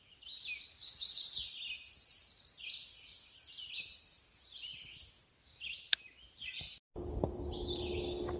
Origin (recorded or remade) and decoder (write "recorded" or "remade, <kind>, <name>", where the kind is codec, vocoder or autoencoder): recorded